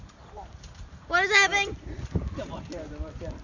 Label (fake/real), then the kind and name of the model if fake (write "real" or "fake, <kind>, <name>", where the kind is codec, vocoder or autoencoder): real